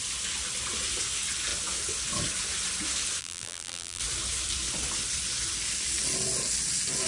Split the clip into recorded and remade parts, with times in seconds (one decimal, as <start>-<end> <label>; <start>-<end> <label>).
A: 0.0-3.2 recorded; 3.2-4.0 remade; 4.0-7.1 recorded